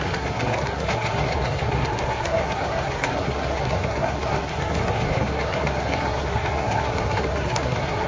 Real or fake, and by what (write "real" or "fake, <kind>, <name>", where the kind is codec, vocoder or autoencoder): fake, codec, SNAC